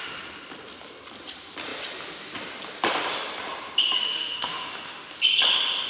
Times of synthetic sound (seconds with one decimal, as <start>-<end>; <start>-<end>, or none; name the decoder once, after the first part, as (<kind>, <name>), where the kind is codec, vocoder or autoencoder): 4.0-5.1 (autoencoder, DAC-VAE)